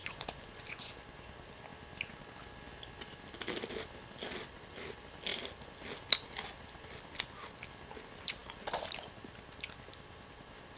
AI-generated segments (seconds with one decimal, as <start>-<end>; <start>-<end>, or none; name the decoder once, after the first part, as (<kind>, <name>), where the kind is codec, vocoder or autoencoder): 0.0-0.9 (vocoder, Vocos)